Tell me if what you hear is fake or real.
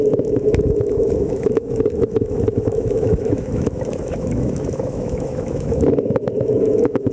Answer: fake